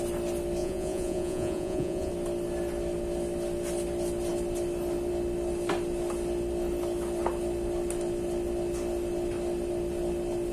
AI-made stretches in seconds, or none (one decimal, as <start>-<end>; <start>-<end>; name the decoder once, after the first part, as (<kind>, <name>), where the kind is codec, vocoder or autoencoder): 0.6-2.1 (vocoder, Vocos)